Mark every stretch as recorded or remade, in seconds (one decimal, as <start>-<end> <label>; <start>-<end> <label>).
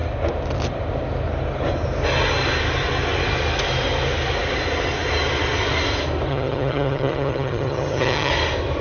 0.0-6.3 recorded; 6.3-8.3 remade; 8.3-8.8 recorded